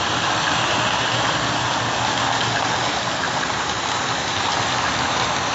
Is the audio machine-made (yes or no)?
no